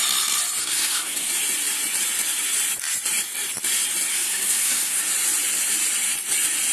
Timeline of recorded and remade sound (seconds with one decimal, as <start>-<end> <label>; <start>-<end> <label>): 0.0-0.6 recorded; 0.6-1.3 remade; 1.3-4.1 recorded; 4.1-5.0 remade; 5.0-6.7 recorded

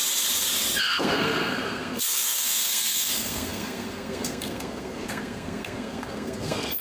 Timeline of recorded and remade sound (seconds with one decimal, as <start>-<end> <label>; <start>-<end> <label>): 0.0-0.8 recorded; 0.8-6.8 remade

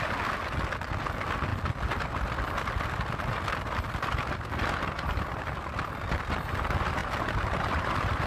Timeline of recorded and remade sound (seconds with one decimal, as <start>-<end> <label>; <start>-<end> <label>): 0.0-8.3 recorded

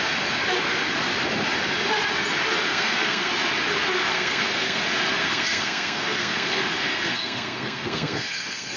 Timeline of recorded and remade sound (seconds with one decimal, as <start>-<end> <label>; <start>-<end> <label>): 0.0-2.7 recorded; 2.7-3.3 remade; 3.3-4.1 recorded; 4.1-4.8 remade; 4.8-5.2 recorded; 5.2-8.8 remade

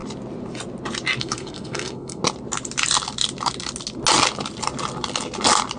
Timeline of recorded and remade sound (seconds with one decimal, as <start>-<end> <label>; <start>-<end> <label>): 0.0-1.2 recorded; 1.2-2.2 remade; 2.2-5.8 recorded

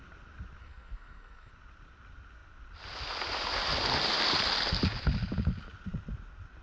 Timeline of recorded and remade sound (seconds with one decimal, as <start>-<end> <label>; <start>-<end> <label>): 0.0-0.6 recorded; 0.6-1.5 remade; 1.5-6.6 recorded

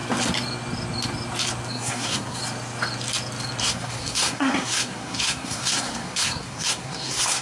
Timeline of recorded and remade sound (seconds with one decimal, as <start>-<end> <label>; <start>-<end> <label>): 0.0-1.7 recorded; 1.7-2.4 remade; 2.4-3.6 recorded; 3.6-7.4 remade

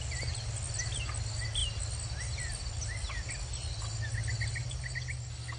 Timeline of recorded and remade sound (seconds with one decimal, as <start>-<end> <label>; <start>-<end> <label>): 0.0-5.6 recorded